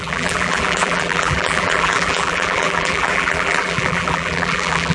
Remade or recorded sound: remade